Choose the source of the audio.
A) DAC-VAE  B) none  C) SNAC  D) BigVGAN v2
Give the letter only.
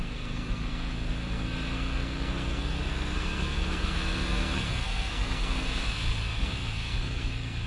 C